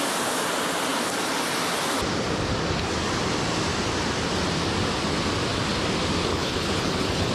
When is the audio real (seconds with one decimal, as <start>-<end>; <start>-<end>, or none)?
0.0-6.3